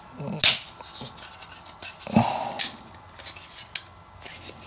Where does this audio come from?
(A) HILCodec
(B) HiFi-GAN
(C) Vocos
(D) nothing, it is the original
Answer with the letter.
D